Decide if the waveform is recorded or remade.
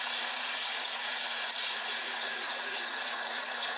remade